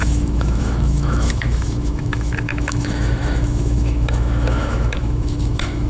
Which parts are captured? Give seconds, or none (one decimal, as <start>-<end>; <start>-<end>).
none